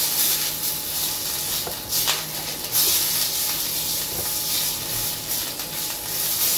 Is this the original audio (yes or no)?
yes